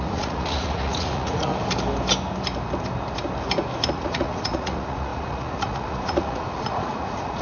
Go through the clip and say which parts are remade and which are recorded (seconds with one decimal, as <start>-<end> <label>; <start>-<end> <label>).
0.0-1.5 remade; 1.5-3.9 recorded; 3.9-7.4 remade